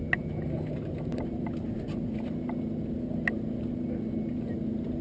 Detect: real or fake real